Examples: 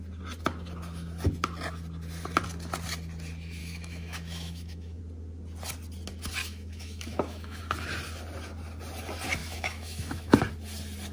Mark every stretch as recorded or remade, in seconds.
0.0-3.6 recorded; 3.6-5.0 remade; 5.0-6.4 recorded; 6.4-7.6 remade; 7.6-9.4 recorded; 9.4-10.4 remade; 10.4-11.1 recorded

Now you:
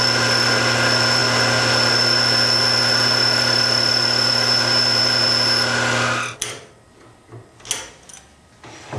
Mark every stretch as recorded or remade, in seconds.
0.0-9.0 recorded

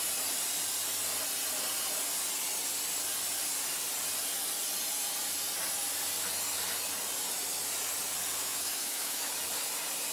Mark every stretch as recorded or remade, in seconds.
0.0-8.4 recorded; 8.4-9.3 remade; 9.3-10.1 recorded